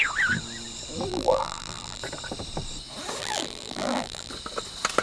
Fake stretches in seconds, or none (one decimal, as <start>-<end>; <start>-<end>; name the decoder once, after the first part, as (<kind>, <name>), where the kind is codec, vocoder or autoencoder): 1.1-2.0 (vocoder, BigVGAN v2); 3.2-4.3